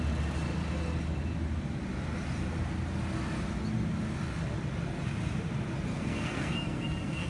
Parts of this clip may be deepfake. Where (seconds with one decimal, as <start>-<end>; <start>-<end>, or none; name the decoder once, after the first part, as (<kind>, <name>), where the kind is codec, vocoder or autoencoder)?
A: 5.9-7.3 (codec, SNAC)